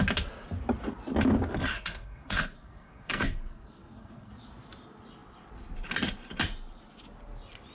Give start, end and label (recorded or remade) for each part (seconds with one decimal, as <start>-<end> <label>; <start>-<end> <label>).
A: 0.0-1.7 recorded; 1.7-4.3 remade; 4.3-7.7 recorded

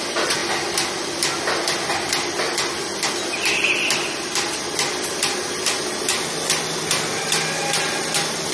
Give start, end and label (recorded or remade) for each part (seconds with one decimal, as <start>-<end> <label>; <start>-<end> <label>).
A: 0.0-8.5 recorded

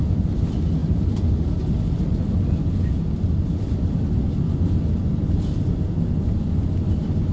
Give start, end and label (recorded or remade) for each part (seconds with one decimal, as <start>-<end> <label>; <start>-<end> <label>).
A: 0.0-7.3 recorded

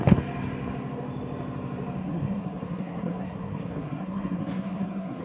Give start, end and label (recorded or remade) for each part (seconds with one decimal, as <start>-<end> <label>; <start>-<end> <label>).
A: 0.0-2.0 recorded; 2.0-5.2 remade

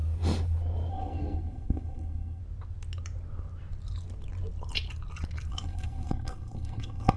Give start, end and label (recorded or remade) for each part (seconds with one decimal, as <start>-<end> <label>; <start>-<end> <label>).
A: 0.0-0.9 recorded; 0.9-2.4 remade; 2.4-5.5 recorded; 5.5-7.2 remade